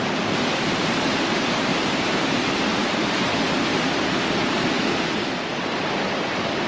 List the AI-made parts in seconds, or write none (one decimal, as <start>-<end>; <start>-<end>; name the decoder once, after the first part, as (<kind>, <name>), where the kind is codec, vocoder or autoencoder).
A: 1.7-4.7 (vocoder, BigVGAN v2)